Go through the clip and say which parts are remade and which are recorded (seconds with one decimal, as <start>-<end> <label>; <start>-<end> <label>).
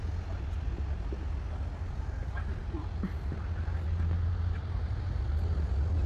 0.0-6.1 recorded